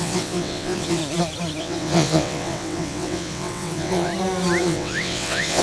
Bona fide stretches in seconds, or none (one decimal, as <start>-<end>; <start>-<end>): 1.0-1.6; 4.1-4.6